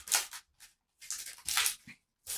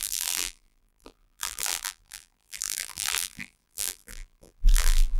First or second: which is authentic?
first